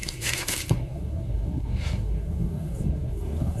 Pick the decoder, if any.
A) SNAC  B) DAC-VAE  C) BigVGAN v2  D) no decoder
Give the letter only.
A